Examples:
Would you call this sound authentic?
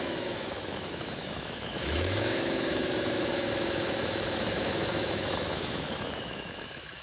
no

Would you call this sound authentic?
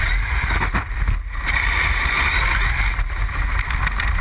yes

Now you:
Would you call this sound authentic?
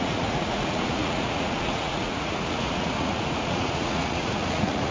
no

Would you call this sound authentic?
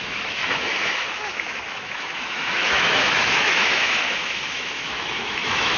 no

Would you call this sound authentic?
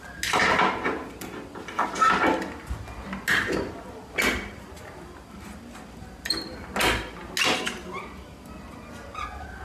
yes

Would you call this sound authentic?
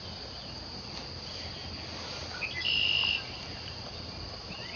yes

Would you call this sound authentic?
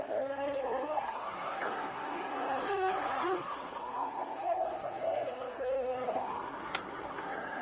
no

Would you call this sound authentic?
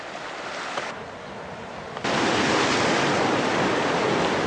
yes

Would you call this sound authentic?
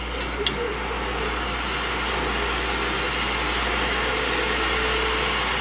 yes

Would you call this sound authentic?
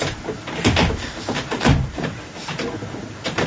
yes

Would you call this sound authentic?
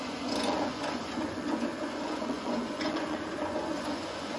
no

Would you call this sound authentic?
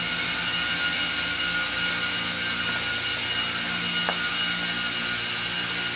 yes